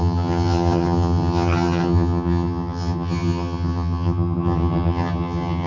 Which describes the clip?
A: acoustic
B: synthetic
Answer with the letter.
B